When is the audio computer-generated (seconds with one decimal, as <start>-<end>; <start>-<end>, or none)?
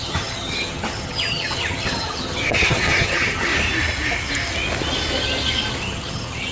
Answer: 0.0-3.5; 5.7-6.5